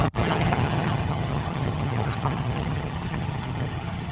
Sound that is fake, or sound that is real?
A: fake